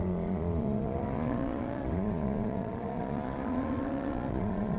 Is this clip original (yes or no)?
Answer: no